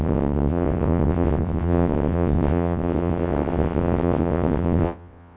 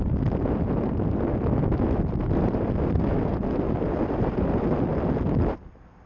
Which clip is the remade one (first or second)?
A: first